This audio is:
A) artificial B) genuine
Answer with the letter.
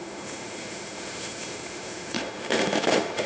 A